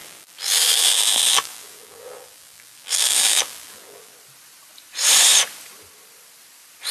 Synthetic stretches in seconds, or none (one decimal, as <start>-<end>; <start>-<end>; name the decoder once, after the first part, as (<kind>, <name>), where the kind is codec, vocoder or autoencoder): 0.0-4.1 (vocoder, BigVGAN v2)